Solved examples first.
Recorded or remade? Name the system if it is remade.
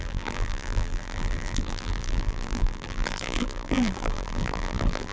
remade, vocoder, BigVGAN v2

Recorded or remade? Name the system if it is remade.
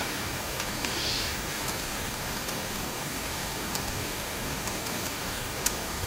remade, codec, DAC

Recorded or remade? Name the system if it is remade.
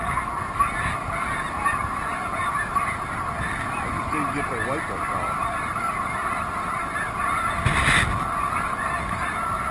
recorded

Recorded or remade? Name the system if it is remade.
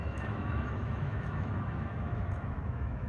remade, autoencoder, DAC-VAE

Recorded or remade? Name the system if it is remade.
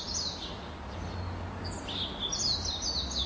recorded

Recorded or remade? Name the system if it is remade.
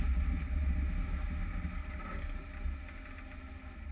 recorded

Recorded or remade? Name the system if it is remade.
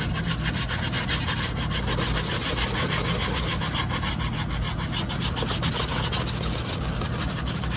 recorded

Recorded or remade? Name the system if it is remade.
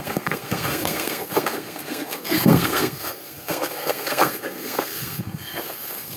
remade, codec, SNAC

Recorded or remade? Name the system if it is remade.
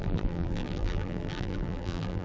remade, vocoder, BigVGAN v2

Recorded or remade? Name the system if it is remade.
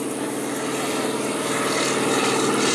recorded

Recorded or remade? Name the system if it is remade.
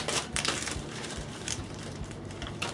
remade, vocoder, BigVGAN v2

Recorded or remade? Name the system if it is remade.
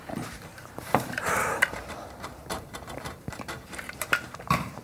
remade, vocoder, BigVGAN v2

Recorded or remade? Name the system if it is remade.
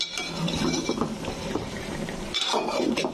recorded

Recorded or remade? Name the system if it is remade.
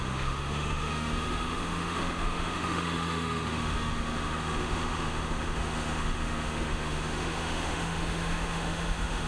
remade, autoencoder, DAC-VAE